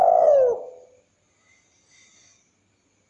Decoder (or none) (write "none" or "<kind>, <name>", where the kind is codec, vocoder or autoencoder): none